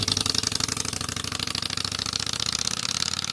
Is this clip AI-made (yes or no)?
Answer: no